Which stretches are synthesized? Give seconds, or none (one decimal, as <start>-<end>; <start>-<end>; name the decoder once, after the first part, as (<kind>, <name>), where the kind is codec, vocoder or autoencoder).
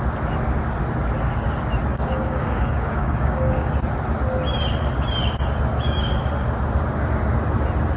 1.9-3.7 (codec, DAC)